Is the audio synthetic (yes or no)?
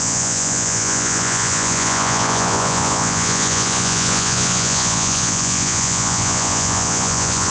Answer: yes